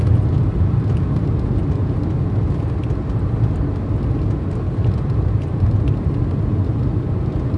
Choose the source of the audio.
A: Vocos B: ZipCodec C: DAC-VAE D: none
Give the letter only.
D